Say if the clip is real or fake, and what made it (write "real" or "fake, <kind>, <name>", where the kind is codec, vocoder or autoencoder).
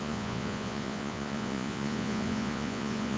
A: fake, vocoder, Vocos